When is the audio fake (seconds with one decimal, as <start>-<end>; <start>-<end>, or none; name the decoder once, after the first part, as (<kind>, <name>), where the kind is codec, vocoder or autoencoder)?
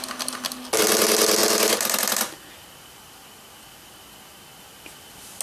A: none